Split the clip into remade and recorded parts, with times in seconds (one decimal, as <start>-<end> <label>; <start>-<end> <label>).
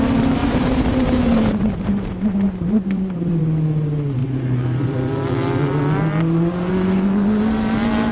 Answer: 0.0-0.4 recorded; 0.4-3.4 remade; 3.4-8.1 recorded